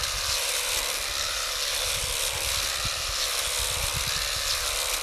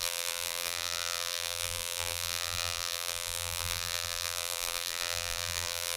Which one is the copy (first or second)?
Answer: second